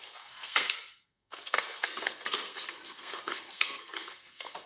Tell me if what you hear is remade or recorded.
remade